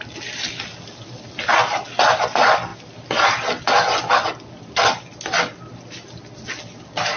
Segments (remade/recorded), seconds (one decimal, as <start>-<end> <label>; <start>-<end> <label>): 0.0-7.2 recorded